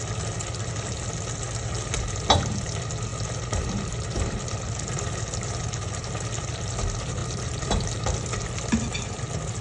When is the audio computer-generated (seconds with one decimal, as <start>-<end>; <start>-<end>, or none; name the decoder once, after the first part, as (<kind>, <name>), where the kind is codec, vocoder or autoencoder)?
3.1-5.6 (vocoder, BigVGAN v2); 7.2-8.0